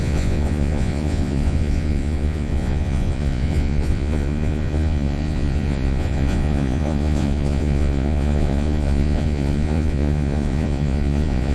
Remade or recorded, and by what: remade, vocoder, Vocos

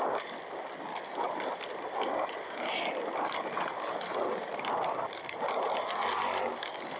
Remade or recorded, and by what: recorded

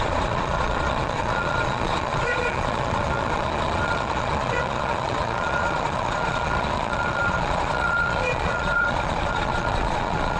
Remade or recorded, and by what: remade, vocoder, Vocos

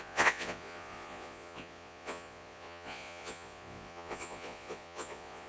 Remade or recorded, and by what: remade, vocoder, Vocos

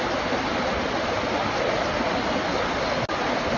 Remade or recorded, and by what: recorded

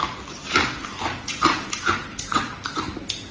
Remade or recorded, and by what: recorded